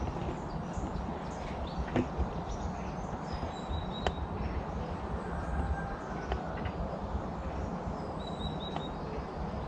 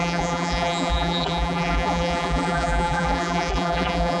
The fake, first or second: second